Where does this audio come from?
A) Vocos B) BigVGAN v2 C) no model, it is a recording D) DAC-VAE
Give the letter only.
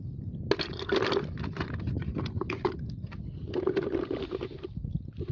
C